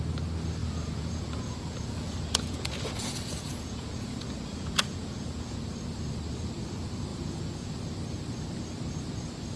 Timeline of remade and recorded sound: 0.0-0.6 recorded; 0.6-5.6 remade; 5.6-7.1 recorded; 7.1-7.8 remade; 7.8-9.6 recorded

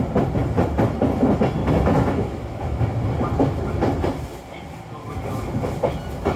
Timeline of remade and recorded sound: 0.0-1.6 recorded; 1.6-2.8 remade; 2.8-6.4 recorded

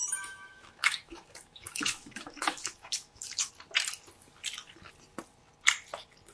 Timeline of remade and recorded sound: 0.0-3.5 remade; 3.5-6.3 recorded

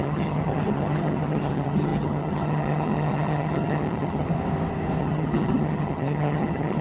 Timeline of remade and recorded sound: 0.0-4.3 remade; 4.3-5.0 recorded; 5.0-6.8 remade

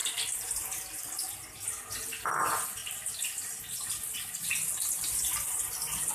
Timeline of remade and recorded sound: 0.0-6.1 recorded